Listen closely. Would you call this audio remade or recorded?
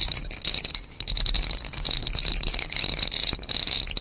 recorded